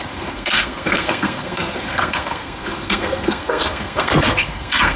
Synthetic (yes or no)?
yes